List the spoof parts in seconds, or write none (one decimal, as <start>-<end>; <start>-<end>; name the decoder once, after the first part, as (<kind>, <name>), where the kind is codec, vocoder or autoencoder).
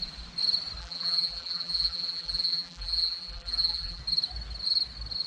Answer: 0.8-4.0 (vocoder, BigVGAN v2)